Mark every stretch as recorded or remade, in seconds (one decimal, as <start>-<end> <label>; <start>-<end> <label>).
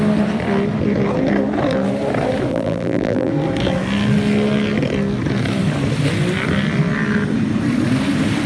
0.0-2.5 recorded; 2.5-3.3 remade; 3.3-8.5 recorded